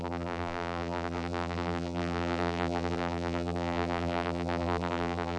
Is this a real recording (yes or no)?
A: no